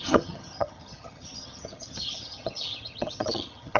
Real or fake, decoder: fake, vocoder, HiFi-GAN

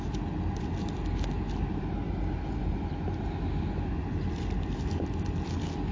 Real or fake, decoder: real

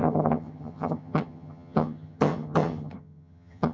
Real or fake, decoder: fake, vocoder, HiFi-GAN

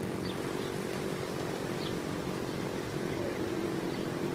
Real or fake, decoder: real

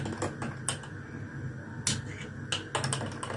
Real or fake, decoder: real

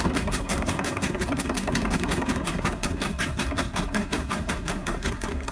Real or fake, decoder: fake, codec, SNAC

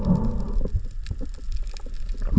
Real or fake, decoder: real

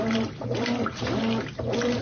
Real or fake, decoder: real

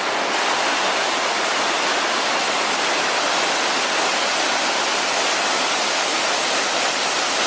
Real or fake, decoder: real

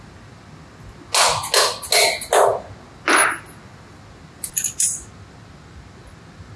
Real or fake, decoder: real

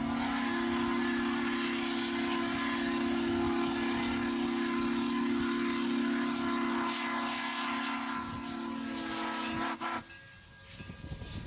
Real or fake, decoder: real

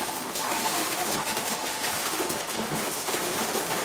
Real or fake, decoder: fake, autoencoder, DAC-VAE